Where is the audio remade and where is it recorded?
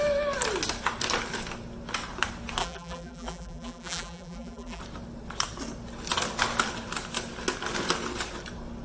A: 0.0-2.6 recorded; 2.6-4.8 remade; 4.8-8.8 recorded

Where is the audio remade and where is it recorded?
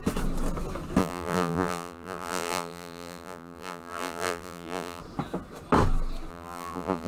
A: 0.0-1.0 recorded; 1.0-5.0 remade; 5.0-6.3 recorded; 6.3-7.1 remade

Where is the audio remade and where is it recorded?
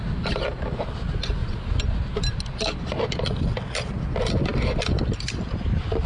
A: 0.0-1.4 recorded; 1.4-2.2 remade; 2.2-6.1 recorded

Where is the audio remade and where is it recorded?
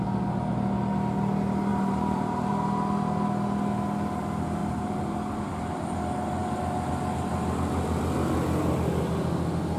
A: 0.0-1.7 recorded; 1.7-2.5 remade; 2.5-4.6 recorded; 4.6-5.5 remade; 5.5-9.8 recorded